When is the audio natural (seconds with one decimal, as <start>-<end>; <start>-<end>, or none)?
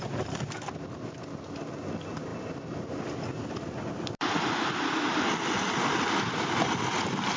0.0-7.4